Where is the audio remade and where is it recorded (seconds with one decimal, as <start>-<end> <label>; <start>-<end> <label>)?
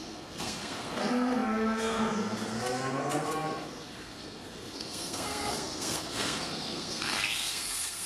0.0-8.1 remade